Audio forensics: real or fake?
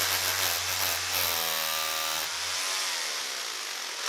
real